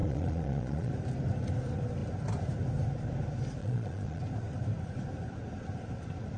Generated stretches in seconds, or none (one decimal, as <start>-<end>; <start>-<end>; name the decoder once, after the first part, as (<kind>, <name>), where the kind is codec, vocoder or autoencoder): 0.0-0.9 (vocoder, Vocos); 3.6-4.2